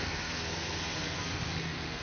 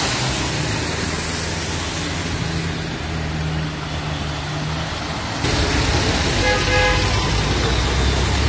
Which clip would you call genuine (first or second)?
second